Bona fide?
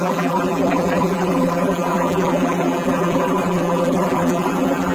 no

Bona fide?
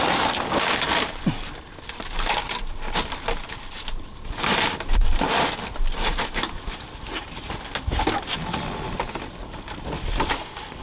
yes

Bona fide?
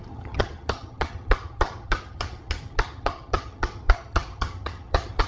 no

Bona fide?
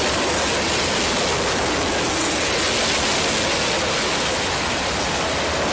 yes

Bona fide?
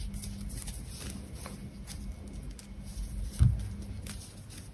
yes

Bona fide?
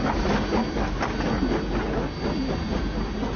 yes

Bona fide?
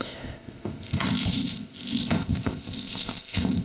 no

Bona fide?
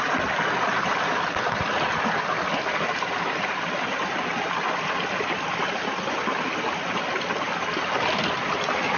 yes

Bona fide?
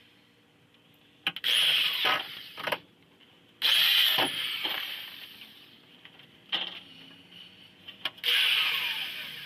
yes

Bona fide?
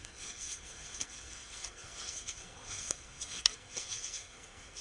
no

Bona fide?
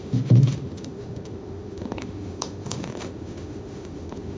no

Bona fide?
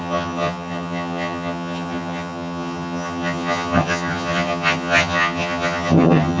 no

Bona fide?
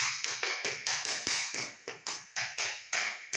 no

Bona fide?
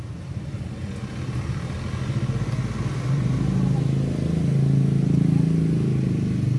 yes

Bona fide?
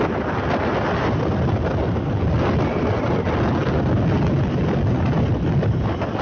yes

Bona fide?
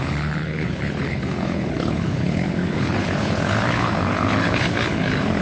no